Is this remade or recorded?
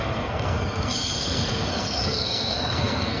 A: remade